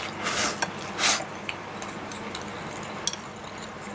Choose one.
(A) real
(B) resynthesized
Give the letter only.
A